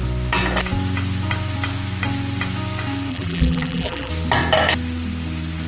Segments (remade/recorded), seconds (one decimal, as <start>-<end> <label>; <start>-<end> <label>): 0.0-3.1 recorded; 3.1-4.1 remade; 4.1-5.7 recorded